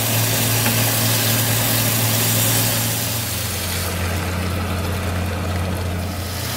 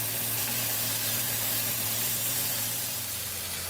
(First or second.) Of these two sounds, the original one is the first